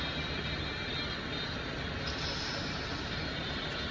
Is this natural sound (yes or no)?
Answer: yes